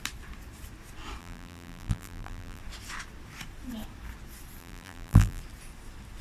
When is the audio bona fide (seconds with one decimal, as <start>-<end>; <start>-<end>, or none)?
0.0-1.2; 2.6-4.6; 5.4-6.2